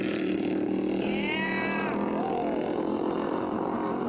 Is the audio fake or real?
fake